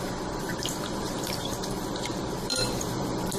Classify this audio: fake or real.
fake